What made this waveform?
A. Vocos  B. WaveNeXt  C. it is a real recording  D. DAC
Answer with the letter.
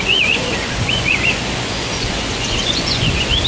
A